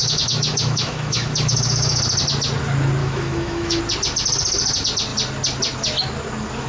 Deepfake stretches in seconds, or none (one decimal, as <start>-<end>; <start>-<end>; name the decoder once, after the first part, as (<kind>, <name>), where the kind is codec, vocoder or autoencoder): 0.0-2.0 (autoencoder, DAC-VAE); 3.0-3.8